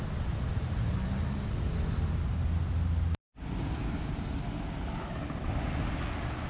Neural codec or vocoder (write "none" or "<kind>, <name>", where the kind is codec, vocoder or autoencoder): none